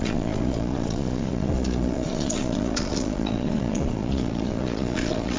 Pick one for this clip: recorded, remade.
remade